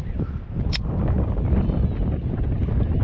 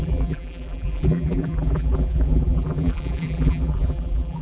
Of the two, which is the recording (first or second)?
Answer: first